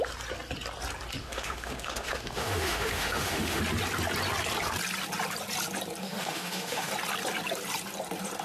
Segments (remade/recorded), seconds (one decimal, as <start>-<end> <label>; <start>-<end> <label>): 0.0-1.2 recorded; 1.2-3.6 remade; 3.6-6.0 recorded; 6.0-6.9 remade; 6.9-8.4 recorded